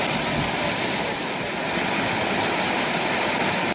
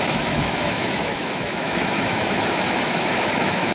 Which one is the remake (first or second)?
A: second